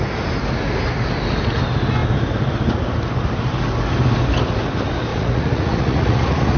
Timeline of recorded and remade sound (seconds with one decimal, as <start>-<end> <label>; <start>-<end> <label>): 0.0-5.1 recorded; 5.1-6.6 remade